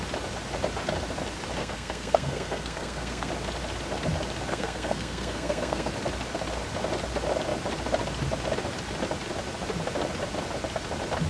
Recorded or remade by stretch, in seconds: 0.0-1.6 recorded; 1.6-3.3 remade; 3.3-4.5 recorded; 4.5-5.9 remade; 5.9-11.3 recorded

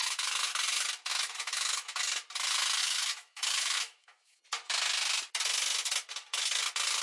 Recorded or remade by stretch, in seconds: 0.0-0.6 remade; 0.6-1.1 recorded; 1.1-2.0 remade; 2.0-2.8 recorded; 2.8-4.4 remade; 4.4-7.0 recorded